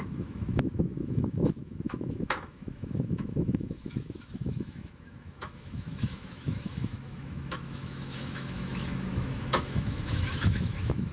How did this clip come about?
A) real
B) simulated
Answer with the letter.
B